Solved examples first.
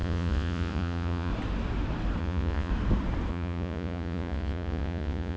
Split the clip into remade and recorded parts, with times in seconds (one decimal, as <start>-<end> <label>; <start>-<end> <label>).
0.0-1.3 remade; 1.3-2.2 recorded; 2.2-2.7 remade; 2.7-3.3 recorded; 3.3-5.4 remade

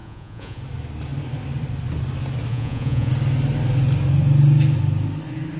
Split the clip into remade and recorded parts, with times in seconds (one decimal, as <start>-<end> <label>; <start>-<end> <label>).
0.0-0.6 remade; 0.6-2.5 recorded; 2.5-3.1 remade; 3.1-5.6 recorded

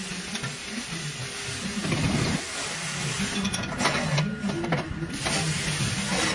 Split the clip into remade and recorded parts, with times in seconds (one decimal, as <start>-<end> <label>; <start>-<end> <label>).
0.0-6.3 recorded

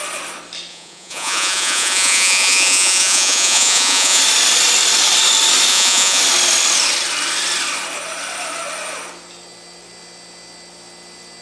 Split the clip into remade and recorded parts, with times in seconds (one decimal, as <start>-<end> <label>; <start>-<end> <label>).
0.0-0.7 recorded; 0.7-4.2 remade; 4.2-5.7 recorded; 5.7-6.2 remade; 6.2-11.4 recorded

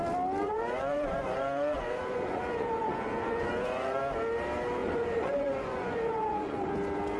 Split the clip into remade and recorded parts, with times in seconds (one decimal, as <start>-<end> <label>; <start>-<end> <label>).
0.0-0.4 recorded; 0.4-4.0 remade; 4.0-4.8 recorded; 4.8-6.7 remade; 6.7-7.2 recorded

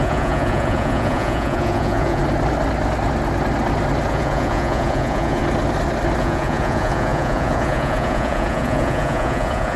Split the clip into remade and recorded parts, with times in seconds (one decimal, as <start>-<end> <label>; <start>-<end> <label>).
0.0-2.2 remade; 2.2-4.1 recorded; 4.1-5.4 remade; 5.4-6.2 recorded; 6.2-9.8 remade

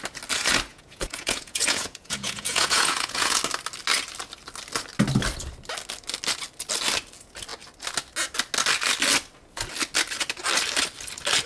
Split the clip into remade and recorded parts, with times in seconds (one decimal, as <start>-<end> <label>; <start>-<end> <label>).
0.0-0.7 recorded; 0.7-3.4 remade; 3.4-11.5 recorded

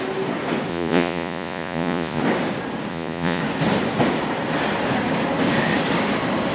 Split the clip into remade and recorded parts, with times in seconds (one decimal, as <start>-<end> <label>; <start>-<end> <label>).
0.0-0.7 recorded; 0.7-2.2 remade; 2.2-2.9 recorded; 2.9-3.4 remade; 3.4-6.5 recorded